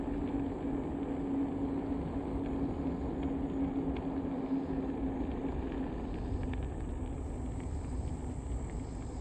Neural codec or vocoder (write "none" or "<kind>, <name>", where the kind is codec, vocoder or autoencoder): none